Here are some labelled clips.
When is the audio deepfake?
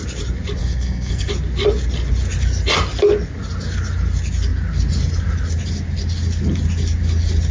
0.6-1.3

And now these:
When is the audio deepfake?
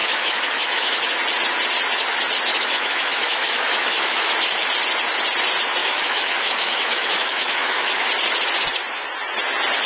0.0-1.0; 2.5-4.3; 5.8-8.0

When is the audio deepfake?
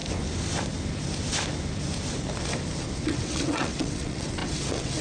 3.0-5.0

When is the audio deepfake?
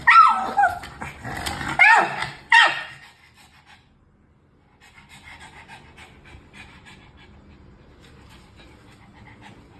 0.0-0.8; 2.2-3.6